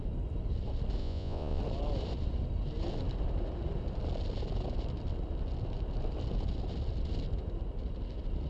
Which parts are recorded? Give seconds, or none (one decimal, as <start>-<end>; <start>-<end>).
0.0-1.0; 1.6-8.5